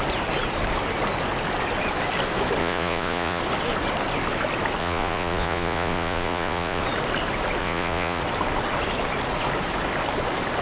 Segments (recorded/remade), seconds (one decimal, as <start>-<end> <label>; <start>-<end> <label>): 0.0-2.6 recorded; 2.6-3.4 remade; 3.4-4.8 recorded; 4.8-6.8 remade; 6.8-7.6 recorded; 7.6-8.2 remade; 8.2-10.6 recorded